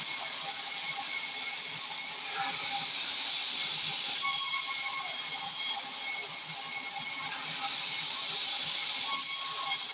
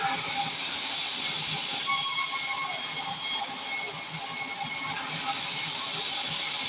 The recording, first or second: second